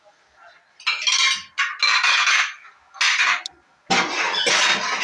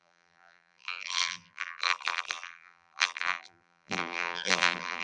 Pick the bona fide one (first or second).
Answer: first